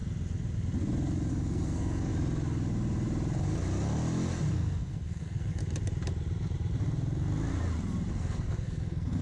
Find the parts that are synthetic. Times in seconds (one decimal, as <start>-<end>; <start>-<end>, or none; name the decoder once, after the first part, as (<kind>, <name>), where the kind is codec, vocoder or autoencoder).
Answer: 1.3-2.1 (codec, SNAC); 4.5-5.6; 8.1-9.2